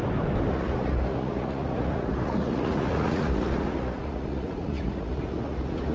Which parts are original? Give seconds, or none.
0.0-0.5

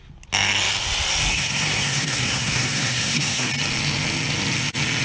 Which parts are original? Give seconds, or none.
0.0-1.3; 3.5-5.0

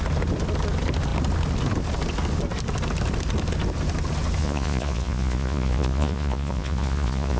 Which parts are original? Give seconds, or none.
0.0-4.4

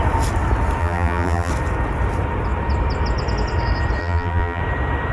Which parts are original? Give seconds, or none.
0.0-0.8; 1.5-4.0; 4.6-5.1

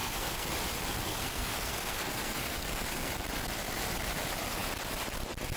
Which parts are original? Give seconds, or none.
0.5-1.0; 3.1-5.6

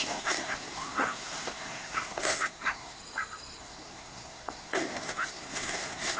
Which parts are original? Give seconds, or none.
3.0-3.6

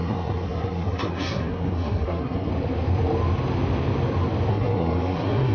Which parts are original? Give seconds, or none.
2.5-4.5